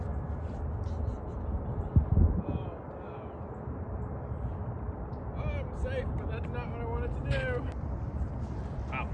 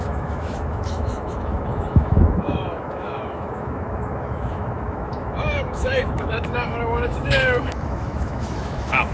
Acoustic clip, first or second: first